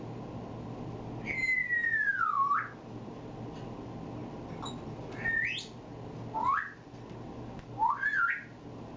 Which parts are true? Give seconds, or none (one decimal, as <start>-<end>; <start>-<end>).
0.0-9.0